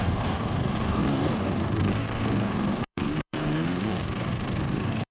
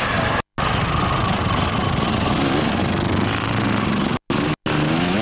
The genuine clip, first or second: second